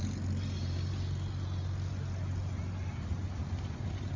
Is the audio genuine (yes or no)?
yes